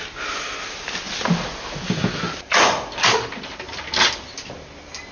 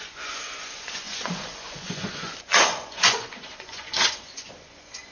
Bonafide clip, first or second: first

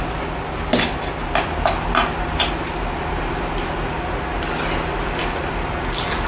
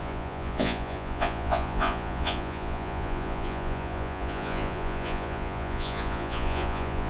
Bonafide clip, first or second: first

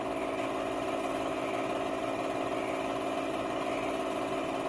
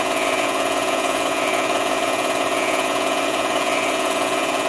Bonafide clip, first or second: first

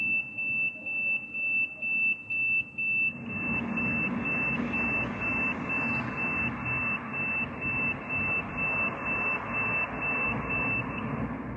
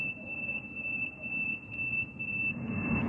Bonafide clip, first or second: first